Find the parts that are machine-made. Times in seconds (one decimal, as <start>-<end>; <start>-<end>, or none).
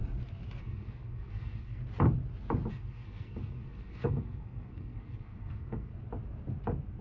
0.6-1.8; 2.7-5.9